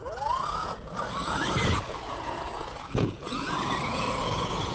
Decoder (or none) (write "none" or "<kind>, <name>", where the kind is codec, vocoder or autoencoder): vocoder, Vocos